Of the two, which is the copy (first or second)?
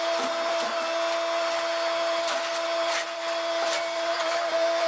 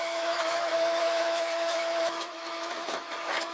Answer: second